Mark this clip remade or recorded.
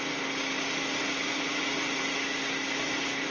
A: recorded